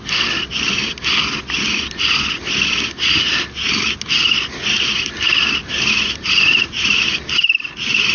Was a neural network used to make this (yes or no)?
no